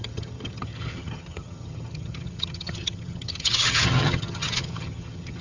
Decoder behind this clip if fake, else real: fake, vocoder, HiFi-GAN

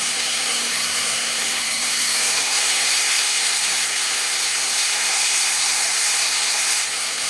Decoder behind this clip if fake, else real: fake, codec, SNAC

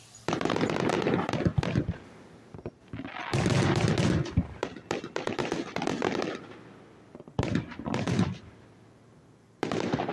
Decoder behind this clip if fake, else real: fake, vocoder, BigVGAN v2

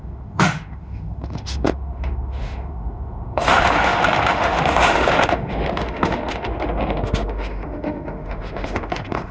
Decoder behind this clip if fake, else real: fake, autoencoder, DAC-VAE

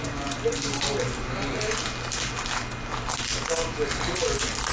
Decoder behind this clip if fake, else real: real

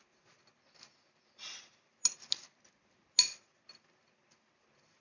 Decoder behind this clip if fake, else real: real